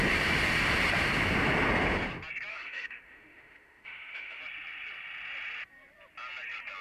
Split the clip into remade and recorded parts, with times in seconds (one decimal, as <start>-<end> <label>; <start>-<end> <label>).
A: 0.0-2.5 recorded; 2.5-4.4 remade; 4.4-6.8 recorded